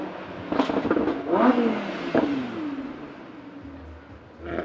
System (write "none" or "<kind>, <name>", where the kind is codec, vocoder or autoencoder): none